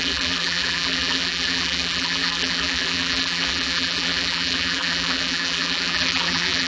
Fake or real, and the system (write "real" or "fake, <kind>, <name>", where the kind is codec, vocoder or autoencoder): fake, vocoder, BigVGAN v2